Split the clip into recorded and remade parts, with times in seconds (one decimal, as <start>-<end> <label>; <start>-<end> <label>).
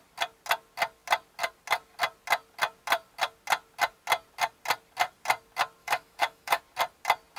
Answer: 0.0-5.8 recorded; 5.8-6.6 remade; 6.6-7.4 recorded